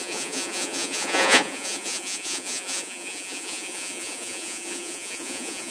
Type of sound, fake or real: fake